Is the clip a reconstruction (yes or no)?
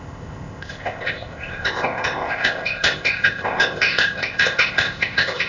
yes